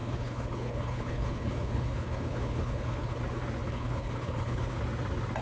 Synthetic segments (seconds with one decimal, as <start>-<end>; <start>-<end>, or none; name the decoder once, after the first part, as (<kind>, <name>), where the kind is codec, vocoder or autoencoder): 0.0-3.2 (codec, HILCodec); 3.6-4.8